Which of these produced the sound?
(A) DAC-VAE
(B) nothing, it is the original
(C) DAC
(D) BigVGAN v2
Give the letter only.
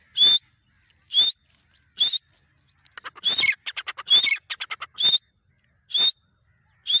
B